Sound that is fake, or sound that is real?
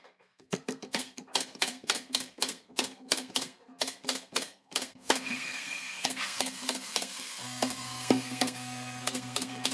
fake